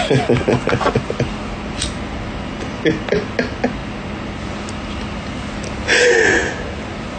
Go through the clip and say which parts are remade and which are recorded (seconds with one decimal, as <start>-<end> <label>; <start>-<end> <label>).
0.0-7.2 recorded

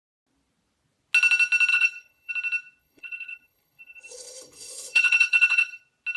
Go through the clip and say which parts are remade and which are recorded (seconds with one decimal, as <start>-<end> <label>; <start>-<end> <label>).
0.0-1.7 recorded; 1.7-2.3 remade; 2.3-2.8 recorded; 2.8-5.8 remade; 5.8-6.2 recorded

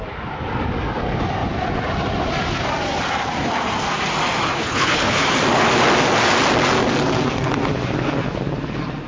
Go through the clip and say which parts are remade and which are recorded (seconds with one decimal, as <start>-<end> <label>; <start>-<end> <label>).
0.0-4.5 recorded; 4.5-5.2 remade; 5.2-9.1 recorded

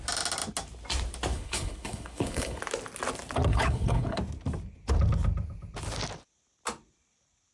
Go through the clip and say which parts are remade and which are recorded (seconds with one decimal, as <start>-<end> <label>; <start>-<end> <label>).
0.0-1.3 recorded; 1.3-2.6 remade; 2.6-3.5 recorded; 3.5-4.2 remade; 4.2-7.5 recorded

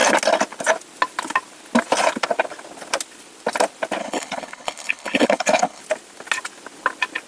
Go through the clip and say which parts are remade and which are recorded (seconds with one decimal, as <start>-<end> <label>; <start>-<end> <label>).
0.0-4.0 recorded; 4.0-5.8 remade; 5.8-7.3 recorded